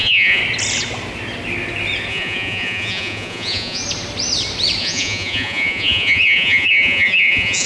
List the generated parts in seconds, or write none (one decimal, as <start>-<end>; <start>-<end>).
0.0-0.4; 2.1-3.8; 4.8-7.7